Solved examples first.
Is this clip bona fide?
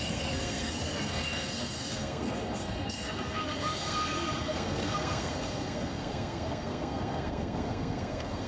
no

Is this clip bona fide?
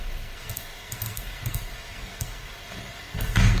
no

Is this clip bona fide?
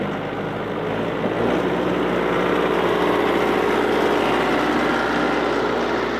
yes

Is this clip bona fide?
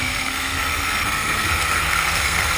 no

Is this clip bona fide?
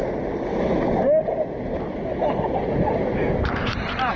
yes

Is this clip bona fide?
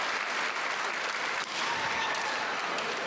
yes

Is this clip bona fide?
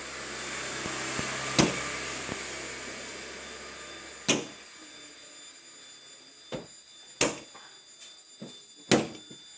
yes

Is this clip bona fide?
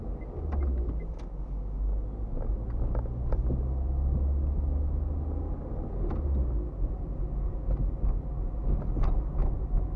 yes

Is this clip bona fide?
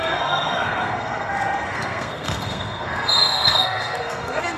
no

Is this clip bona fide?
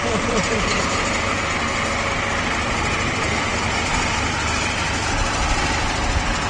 yes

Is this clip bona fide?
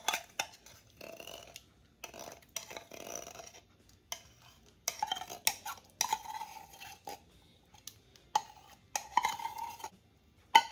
yes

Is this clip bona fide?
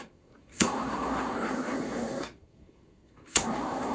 no